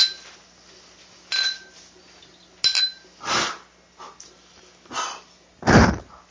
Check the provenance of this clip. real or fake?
real